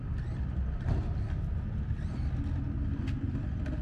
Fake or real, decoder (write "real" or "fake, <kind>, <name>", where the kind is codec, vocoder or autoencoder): real